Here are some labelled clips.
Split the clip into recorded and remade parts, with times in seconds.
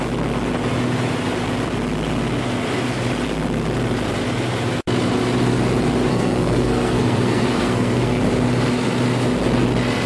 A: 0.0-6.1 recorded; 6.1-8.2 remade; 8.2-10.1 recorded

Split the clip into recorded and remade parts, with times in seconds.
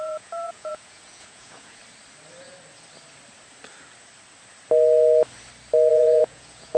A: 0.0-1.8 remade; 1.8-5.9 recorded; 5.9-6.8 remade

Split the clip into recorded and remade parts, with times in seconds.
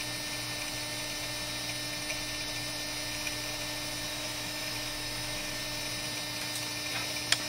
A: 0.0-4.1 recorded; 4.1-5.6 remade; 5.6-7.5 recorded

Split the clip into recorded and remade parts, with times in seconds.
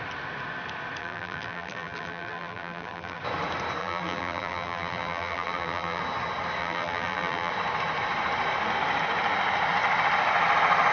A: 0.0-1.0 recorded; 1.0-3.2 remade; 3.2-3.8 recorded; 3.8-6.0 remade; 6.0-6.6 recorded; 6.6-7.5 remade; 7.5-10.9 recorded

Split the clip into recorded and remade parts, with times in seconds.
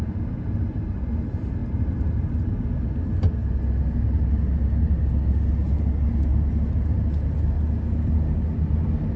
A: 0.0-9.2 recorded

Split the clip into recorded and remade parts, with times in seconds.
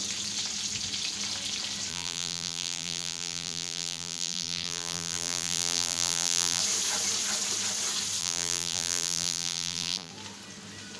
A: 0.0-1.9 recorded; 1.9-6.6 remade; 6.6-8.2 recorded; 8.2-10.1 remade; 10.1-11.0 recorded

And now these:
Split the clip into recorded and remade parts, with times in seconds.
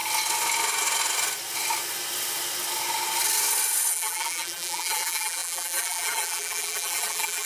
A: 0.0-3.9 recorded; 3.9-7.5 remade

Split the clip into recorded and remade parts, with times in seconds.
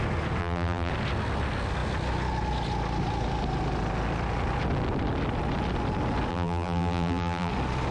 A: 0.0-0.4 recorded; 0.4-0.9 remade; 0.9-6.3 recorded; 6.3-7.5 remade; 7.5-7.9 recorded